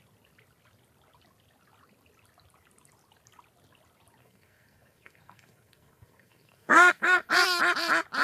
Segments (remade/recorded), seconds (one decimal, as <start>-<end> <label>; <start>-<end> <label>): 0.0-4.2 recorded; 4.2-7.3 remade; 7.3-8.2 recorded